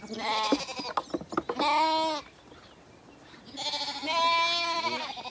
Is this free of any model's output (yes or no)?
yes